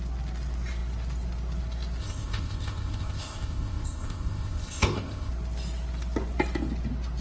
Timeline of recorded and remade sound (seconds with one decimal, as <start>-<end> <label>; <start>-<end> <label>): 0.0-2.0 recorded; 2.0-5.3 remade; 5.3-7.2 recorded